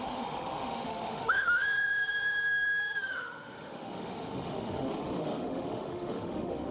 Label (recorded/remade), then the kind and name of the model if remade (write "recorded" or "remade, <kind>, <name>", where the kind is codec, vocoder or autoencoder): remade, autoencoder, DAC-VAE